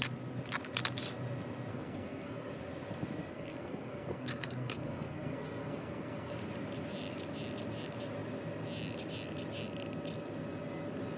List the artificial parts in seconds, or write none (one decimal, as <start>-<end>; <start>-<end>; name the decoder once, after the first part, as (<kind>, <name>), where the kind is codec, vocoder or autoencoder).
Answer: 1.7-2.5 (codec, SNAC); 3.3-6.3